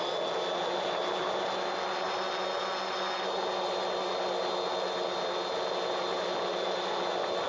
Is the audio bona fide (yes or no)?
yes